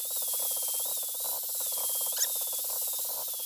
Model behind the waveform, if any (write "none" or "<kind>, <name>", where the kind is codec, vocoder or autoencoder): none